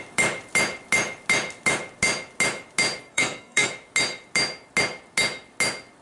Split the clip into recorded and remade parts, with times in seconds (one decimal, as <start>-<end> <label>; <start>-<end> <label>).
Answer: 0.0-3.0 recorded; 3.0-3.7 remade; 3.7-6.0 recorded